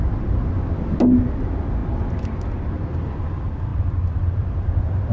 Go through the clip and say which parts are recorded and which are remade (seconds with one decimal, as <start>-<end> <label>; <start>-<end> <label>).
0.0-5.1 recorded